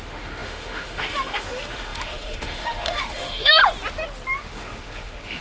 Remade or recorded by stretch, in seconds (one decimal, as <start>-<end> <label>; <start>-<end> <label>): 0.0-3.6 remade; 3.6-4.4 recorded; 4.4-5.4 remade